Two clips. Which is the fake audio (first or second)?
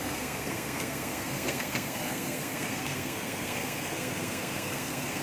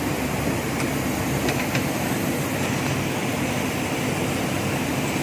first